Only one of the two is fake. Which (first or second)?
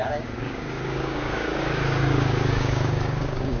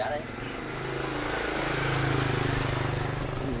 first